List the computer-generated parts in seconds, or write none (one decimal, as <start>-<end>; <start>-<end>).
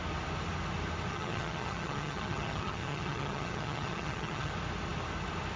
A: 1.1-4.5